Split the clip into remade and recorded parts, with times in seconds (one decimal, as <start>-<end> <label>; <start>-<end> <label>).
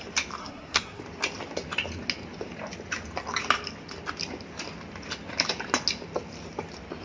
0.0-0.4 recorded; 0.4-1.0 remade; 1.0-7.0 recorded